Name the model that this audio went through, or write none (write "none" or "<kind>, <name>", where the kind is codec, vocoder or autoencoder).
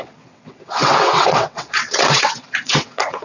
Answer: vocoder, WaveNeXt